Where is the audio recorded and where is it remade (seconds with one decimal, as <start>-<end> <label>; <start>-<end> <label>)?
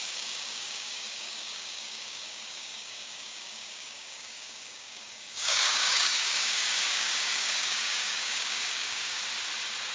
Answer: 0.0-9.2 remade; 9.2-9.9 recorded